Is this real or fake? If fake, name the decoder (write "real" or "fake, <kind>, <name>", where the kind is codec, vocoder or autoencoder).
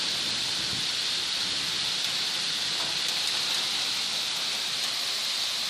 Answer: real